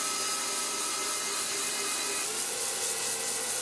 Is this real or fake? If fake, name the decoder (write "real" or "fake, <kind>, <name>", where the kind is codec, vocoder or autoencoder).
real